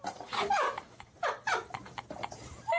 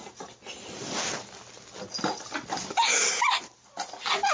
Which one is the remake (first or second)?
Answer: first